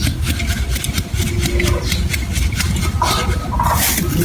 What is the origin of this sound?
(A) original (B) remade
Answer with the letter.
A